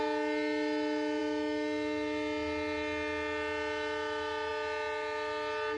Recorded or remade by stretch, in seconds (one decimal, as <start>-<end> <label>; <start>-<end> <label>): 0.0-5.8 recorded